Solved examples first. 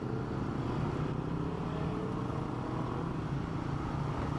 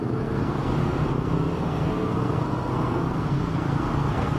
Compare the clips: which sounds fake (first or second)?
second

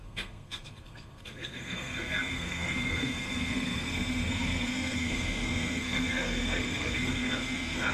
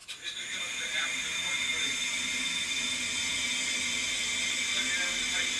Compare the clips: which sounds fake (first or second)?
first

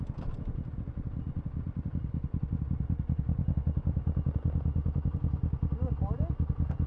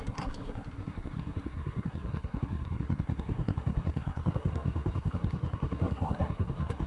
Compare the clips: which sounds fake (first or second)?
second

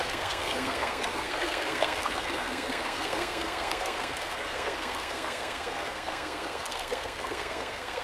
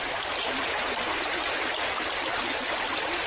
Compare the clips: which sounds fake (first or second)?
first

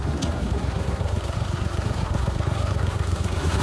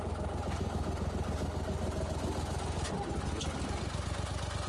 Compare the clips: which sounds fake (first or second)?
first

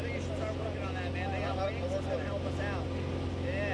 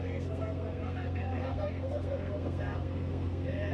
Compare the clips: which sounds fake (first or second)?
second